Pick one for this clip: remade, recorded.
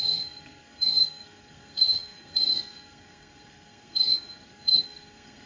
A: remade